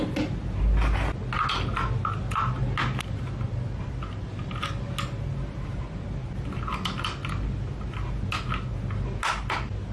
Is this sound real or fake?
real